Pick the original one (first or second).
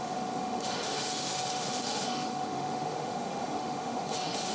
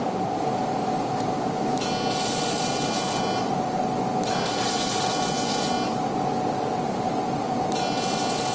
second